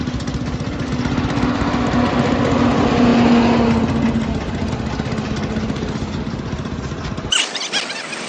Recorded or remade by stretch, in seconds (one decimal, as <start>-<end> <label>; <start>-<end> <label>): 0.0-8.3 recorded